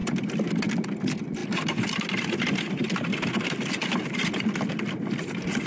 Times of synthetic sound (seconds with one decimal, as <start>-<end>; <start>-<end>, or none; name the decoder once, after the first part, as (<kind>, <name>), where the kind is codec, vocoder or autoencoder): none